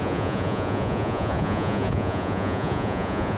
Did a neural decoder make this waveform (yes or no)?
yes